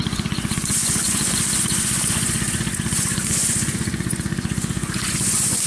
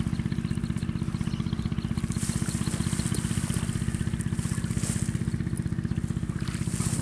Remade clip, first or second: first